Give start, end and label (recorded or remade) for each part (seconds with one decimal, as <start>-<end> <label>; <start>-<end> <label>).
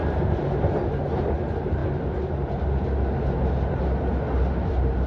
0.0-5.1 recorded